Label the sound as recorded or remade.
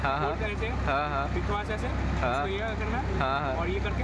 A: recorded